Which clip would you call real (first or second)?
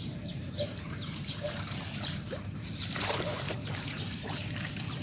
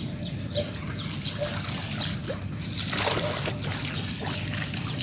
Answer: second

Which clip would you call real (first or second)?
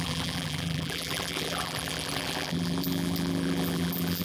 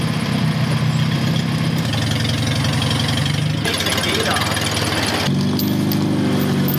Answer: second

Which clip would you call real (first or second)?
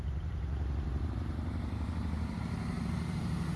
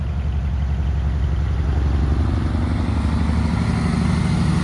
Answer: second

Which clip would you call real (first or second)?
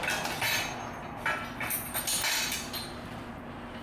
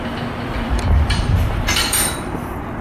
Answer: first